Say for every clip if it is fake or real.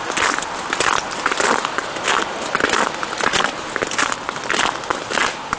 real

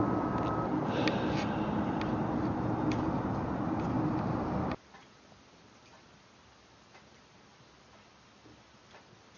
real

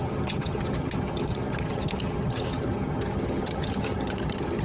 fake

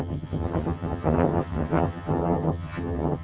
fake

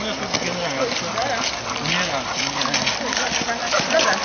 real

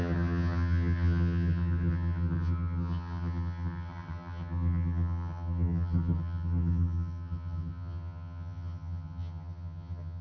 fake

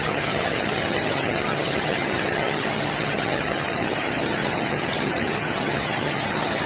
fake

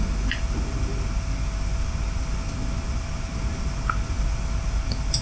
real